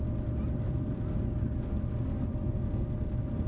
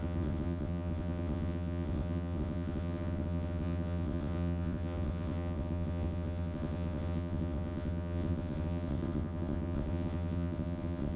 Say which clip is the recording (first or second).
first